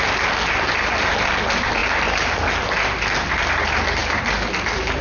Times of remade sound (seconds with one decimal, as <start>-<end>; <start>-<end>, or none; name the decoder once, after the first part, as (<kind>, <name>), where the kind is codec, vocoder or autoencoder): none